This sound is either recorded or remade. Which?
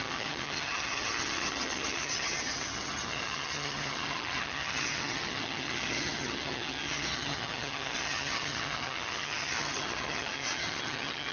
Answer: remade